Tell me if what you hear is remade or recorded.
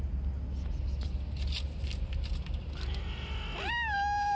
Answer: recorded